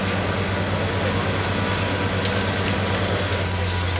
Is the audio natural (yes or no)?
yes